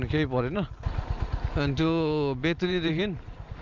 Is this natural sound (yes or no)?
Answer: no